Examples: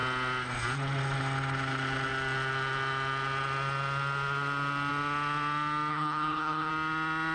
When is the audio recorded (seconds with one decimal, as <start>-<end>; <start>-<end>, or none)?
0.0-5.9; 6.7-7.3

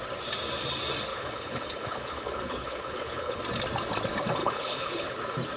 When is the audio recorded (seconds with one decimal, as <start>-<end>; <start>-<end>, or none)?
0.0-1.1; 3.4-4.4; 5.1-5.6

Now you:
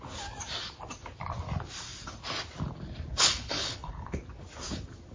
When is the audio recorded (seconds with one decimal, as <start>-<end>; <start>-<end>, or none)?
0.0-3.1; 4.2-5.1

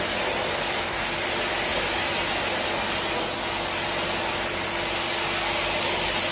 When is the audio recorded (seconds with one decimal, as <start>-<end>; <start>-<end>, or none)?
0.0-6.3